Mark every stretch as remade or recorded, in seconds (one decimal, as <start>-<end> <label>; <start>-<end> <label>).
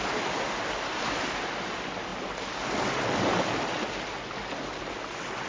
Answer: 0.0-2.1 remade; 2.1-4.8 recorded; 4.8-5.5 remade